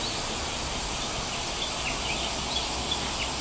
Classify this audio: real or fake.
real